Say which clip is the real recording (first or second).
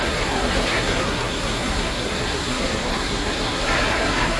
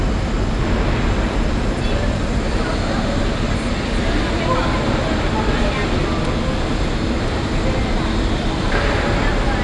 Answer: second